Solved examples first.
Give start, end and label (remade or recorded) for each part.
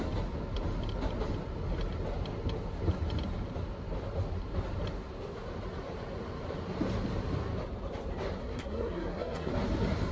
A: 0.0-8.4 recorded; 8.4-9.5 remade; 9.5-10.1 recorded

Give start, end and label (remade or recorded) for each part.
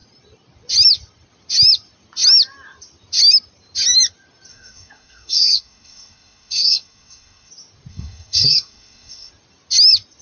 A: 0.0-4.5 recorded; 4.5-7.5 remade; 7.5-7.9 recorded; 7.9-9.3 remade; 9.3-10.2 recorded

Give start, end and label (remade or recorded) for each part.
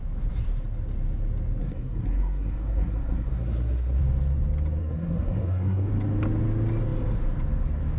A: 0.0-1.6 recorded; 1.6-4.0 remade; 4.0-4.8 recorded; 4.8-5.9 remade; 5.9-8.0 recorded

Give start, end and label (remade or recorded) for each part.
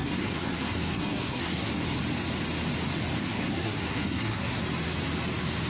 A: 0.0-1.7 remade; 1.7-3.2 recorded; 3.2-4.6 remade; 4.6-5.7 recorded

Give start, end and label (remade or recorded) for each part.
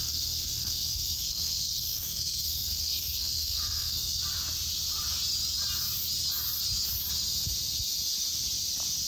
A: 0.0-4.2 remade; 4.2-9.1 recorded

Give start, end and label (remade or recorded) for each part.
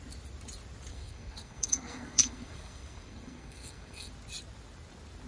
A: 0.0-0.9 recorded; 0.9-4.1 remade; 4.1-5.3 recorded